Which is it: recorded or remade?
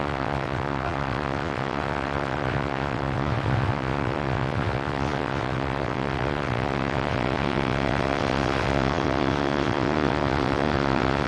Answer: remade